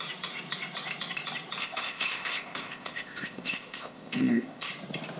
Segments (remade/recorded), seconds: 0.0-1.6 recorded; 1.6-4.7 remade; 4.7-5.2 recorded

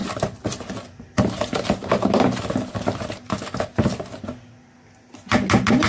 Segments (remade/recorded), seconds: 0.0-5.9 recorded

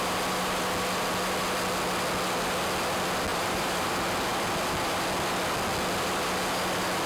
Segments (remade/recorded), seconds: 0.0-3.3 recorded; 3.3-3.9 remade; 3.9-7.1 recorded

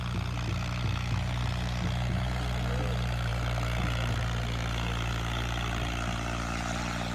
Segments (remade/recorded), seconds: 0.0-7.1 recorded

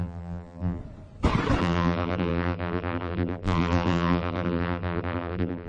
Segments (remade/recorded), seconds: 0.0-0.8 remade; 0.8-1.6 recorded; 1.6-5.7 remade

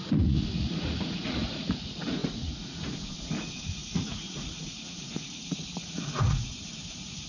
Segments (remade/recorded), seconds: 0.0-7.3 remade

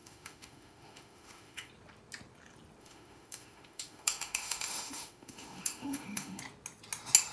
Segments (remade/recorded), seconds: 0.0-1.7 remade; 1.7-2.8 recorded; 2.8-6.4 remade; 6.4-7.3 recorded